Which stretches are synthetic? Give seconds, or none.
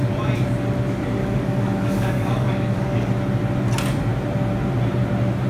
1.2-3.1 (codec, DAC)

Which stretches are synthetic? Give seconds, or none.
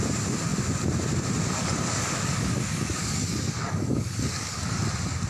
1.6-4.8 (codec, DAC)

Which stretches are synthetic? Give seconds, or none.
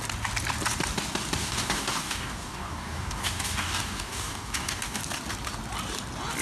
1.4-5.0 (codec, DAC)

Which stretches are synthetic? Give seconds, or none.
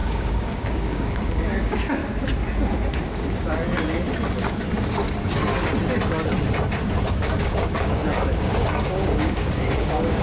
0.0-2.0 (codec, DAC); 7.1-10.2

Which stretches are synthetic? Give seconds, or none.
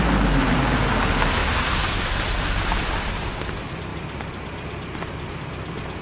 1.4-2.1 (codec, DAC)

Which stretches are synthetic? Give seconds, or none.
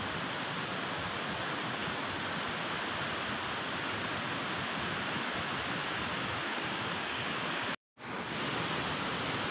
6.5-7.9 (codec, DAC)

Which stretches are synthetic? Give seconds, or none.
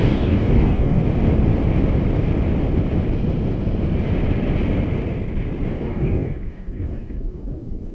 0.0-1.0 (codec, DAC); 5.7-7.9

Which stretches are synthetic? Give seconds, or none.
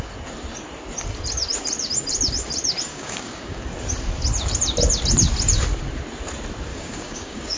2.9-3.6 (codec, DAC); 6.7-7.6